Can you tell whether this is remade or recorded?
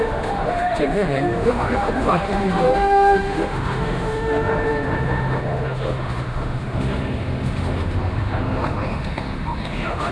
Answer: remade